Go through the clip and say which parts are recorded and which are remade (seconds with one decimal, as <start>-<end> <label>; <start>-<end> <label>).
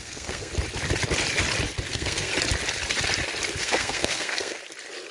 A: 0.0-0.5 remade; 0.5-1.9 recorded; 1.9-2.3 remade; 2.3-3.6 recorded; 3.6-4.6 remade; 4.6-5.1 recorded